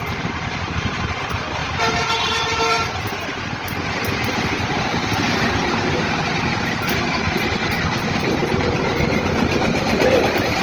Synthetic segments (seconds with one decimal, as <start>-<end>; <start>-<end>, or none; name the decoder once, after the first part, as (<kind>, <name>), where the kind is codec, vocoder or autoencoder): 0.0-5.0 (vocoder, BigVGAN v2); 7.0-10.6